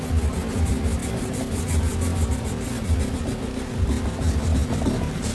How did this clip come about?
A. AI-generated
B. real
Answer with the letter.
B